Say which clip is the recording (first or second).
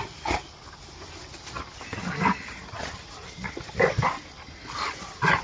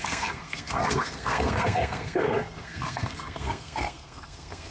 first